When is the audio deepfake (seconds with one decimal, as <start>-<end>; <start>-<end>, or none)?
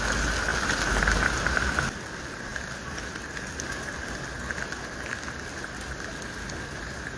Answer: none